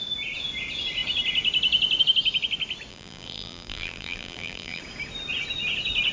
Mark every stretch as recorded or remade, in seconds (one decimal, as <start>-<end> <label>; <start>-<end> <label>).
0.0-2.9 recorded; 2.9-4.8 remade; 4.8-6.1 recorded